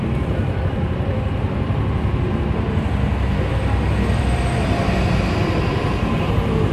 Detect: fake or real real